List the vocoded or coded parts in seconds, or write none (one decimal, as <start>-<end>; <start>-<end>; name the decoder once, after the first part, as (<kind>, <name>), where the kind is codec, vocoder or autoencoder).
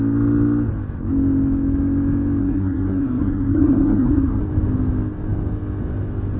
2.4-4.4 (codec, SNAC)